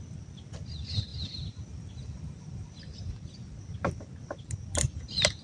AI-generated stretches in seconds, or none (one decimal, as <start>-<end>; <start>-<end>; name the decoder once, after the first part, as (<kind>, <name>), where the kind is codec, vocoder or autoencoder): none